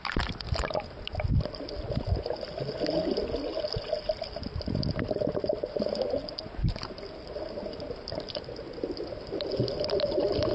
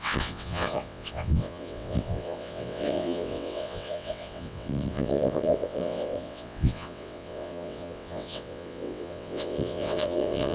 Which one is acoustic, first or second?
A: first